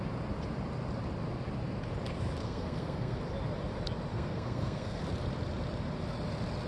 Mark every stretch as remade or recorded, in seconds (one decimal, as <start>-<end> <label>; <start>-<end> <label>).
0.0-2.4 recorded; 2.4-3.2 remade; 3.2-4.1 recorded; 4.1-5.0 remade; 5.0-6.7 recorded